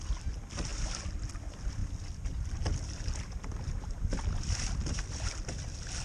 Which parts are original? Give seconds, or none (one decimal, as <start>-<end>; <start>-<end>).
0.0-6.0